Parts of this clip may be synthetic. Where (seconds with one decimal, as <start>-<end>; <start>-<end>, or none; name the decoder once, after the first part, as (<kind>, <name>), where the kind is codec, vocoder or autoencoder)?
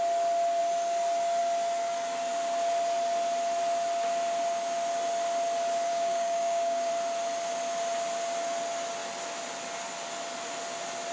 5.9-6.9 (codec, DAC)